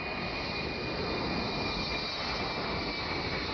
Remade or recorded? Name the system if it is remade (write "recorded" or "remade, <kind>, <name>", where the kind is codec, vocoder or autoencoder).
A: recorded